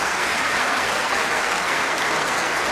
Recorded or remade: remade